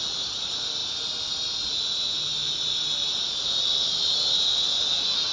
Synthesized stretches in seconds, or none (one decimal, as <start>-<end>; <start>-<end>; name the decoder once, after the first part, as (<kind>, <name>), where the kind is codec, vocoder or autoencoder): none